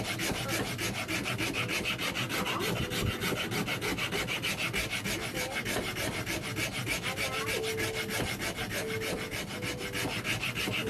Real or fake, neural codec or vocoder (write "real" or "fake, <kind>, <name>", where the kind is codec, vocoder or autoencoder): real